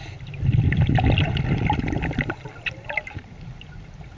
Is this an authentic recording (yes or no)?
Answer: yes